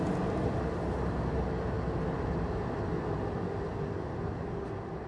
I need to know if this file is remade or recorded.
recorded